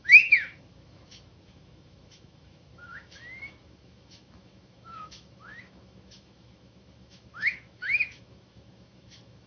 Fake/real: fake